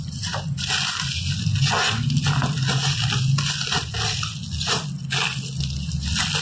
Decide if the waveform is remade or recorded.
recorded